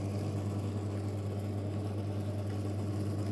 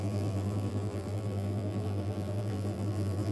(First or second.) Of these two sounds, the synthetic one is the second